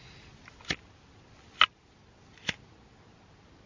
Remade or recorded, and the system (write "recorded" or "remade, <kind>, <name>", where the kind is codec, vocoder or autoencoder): recorded